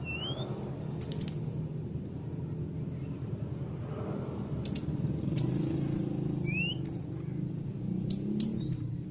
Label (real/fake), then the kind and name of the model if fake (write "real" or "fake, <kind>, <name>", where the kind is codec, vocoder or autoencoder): real